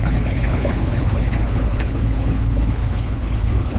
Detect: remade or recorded remade